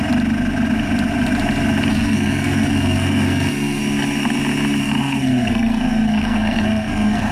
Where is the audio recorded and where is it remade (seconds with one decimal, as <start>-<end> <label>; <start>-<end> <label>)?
0.0-1.9 recorded; 1.9-3.8 remade; 3.8-4.8 recorded; 4.8-7.3 remade